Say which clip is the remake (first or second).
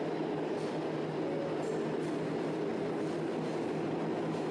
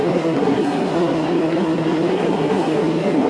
second